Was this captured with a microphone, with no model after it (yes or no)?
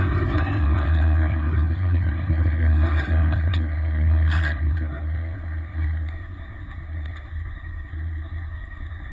no